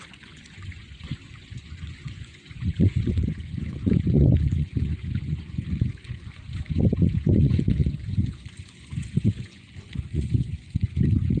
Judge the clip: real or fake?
fake